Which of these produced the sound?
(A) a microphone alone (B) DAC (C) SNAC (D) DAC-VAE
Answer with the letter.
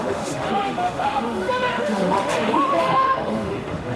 D